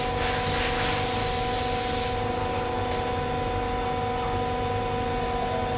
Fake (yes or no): no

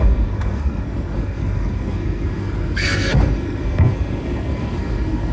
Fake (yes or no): yes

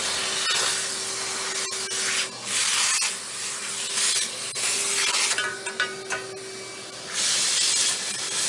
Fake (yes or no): no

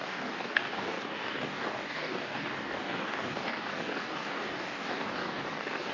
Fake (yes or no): yes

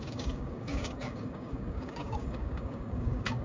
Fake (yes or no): yes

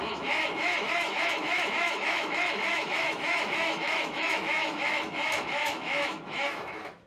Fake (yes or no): yes